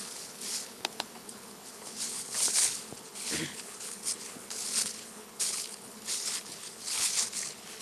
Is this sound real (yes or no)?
no